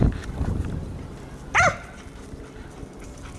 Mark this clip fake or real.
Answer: real